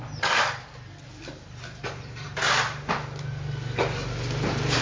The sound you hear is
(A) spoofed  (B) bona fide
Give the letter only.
B